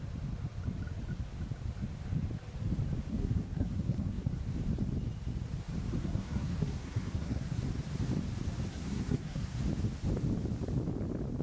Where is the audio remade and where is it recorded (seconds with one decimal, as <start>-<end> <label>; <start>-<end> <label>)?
0.0-3.1 recorded; 3.1-4.3 remade; 4.3-6.0 recorded; 6.0-7.6 remade; 7.6-8.7 recorded; 8.7-9.6 remade; 9.6-11.4 recorded